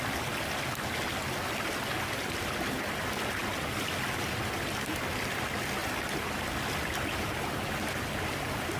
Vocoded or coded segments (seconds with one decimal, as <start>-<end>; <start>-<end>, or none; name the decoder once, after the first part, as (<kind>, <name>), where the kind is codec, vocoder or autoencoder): none